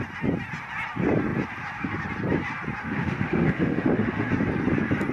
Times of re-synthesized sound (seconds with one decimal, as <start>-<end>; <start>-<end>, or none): 2.8-4.3